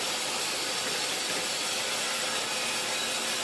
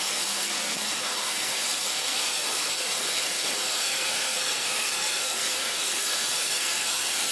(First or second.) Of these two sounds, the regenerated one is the second